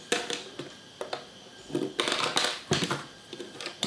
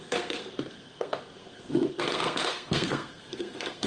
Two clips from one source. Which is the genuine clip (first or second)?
first